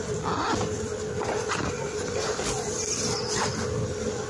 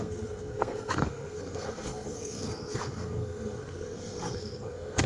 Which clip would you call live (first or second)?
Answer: first